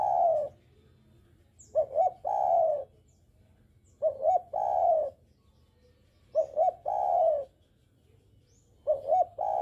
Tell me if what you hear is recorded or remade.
recorded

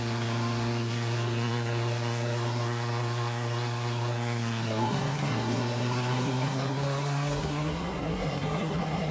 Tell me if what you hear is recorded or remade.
remade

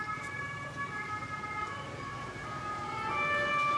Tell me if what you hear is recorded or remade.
remade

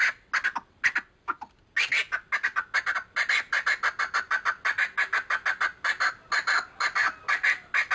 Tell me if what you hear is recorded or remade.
recorded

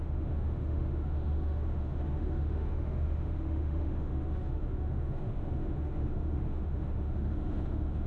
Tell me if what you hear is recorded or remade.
remade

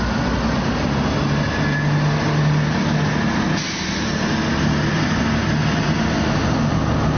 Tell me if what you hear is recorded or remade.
recorded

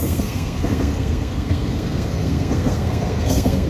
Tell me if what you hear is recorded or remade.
remade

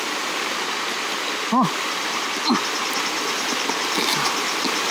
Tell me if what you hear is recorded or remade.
recorded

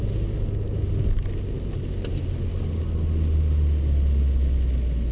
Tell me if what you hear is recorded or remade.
recorded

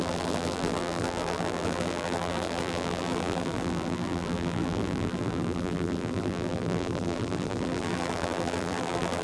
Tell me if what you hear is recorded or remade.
remade